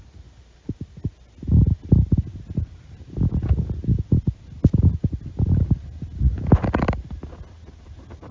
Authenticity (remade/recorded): recorded